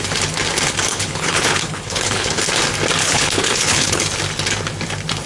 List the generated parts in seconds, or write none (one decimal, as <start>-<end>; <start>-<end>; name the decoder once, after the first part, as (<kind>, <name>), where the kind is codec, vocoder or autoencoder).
0.9-2.4 (codec, HILCodec); 3.0-4.0